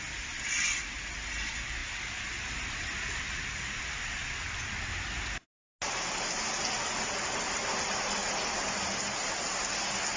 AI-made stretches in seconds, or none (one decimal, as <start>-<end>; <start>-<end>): none